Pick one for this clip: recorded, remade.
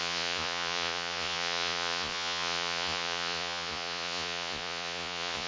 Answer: remade